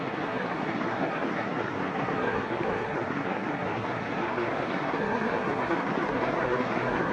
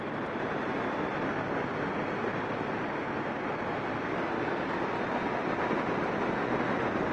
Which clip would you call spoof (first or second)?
first